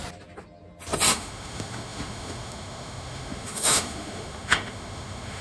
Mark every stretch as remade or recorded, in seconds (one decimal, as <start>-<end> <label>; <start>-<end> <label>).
0.0-1.1 recorded; 1.1-5.4 remade